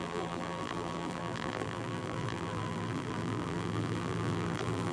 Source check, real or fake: fake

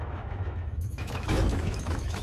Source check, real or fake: fake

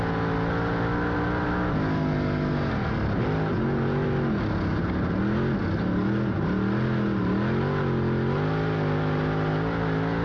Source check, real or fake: real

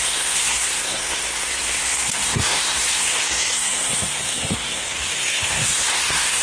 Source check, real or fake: fake